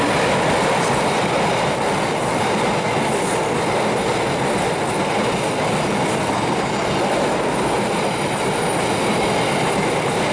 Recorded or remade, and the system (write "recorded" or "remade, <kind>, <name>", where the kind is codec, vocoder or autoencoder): recorded